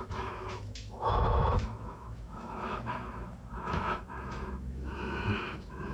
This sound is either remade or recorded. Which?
remade